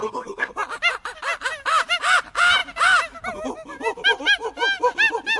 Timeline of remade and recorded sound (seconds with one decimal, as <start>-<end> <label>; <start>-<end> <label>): 0.0-0.5 remade; 0.5-5.4 recorded